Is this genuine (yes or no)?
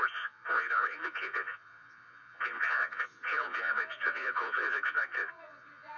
no